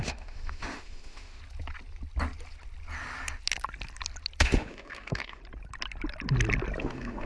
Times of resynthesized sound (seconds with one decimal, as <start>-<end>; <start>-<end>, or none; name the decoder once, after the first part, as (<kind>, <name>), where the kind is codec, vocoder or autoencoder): 0.0-1.4 (autoencoder, DAC-VAE); 4.4-5.4; 6.8-7.3